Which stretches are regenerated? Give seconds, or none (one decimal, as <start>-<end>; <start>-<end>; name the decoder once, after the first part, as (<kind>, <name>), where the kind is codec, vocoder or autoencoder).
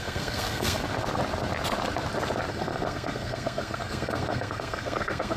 0.0-0.8 (codec, SNAC); 2.5-5.4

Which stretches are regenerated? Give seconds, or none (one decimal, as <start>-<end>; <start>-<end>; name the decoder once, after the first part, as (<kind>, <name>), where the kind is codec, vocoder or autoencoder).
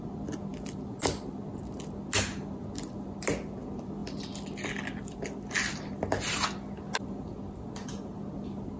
none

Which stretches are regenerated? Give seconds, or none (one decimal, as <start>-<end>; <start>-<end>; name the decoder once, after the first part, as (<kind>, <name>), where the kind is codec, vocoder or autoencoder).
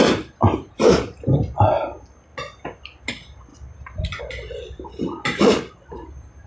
none